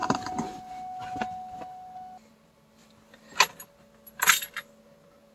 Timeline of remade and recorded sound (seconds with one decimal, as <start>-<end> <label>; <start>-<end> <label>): 0.0-5.3 recorded